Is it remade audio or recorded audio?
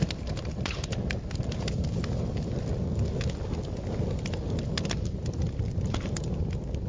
recorded